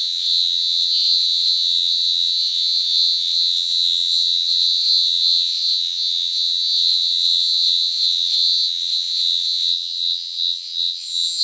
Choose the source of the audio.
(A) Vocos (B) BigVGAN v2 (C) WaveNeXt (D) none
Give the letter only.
C